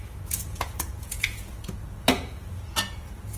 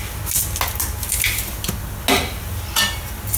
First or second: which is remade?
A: first